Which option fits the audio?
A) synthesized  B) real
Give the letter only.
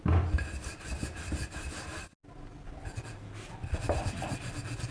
B